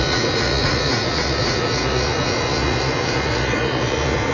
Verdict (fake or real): fake